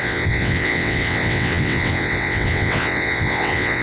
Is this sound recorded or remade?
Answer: remade